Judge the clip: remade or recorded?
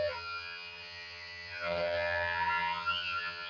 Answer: remade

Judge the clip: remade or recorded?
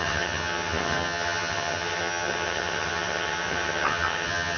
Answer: remade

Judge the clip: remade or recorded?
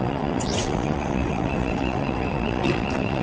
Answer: remade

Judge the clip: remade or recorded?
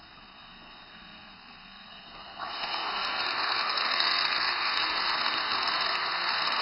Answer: remade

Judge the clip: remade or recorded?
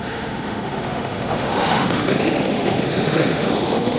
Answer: remade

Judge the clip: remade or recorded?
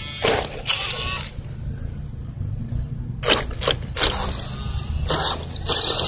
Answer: recorded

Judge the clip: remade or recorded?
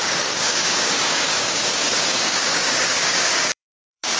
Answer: remade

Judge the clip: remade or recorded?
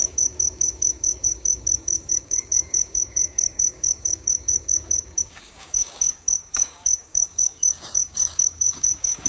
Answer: remade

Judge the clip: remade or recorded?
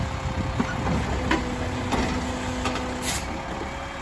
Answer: recorded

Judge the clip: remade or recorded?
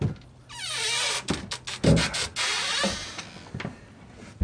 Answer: recorded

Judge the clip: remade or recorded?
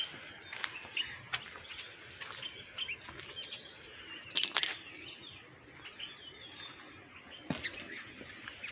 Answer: recorded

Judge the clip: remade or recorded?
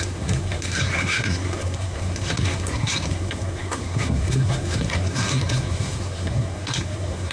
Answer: remade